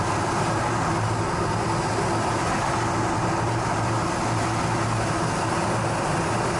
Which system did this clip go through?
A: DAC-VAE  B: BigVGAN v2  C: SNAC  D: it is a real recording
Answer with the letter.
D